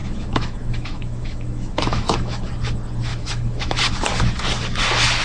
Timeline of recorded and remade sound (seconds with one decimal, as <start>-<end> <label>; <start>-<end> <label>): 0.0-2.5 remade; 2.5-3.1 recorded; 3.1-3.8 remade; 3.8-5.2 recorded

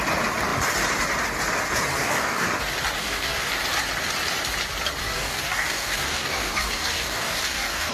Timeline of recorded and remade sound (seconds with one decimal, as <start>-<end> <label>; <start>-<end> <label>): 0.0-1.9 recorded; 1.9-2.5 remade; 2.5-3.0 recorded; 3.0-3.5 remade; 3.5-5.0 recorded; 5.0-7.9 remade

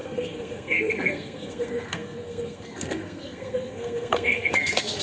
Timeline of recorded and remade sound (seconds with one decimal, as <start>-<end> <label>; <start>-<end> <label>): 0.0-5.0 remade

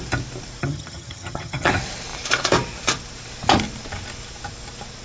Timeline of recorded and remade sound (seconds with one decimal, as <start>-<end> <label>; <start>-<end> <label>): 0.0-0.6 recorded; 0.6-1.7 remade; 1.7-5.0 recorded

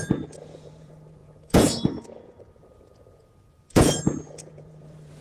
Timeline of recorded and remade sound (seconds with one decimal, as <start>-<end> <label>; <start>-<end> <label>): 0.0-5.2 remade